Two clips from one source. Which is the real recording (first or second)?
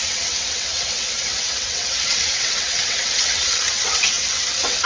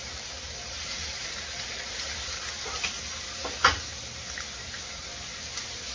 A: second